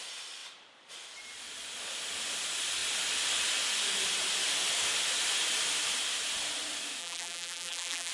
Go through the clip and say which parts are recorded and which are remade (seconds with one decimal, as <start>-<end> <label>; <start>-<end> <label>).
0.0-7.0 recorded; 7.0-8.1 remade